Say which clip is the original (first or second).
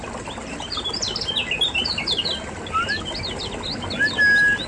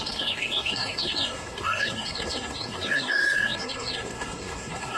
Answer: first